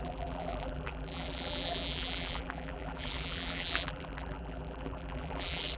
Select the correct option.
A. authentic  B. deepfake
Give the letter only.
B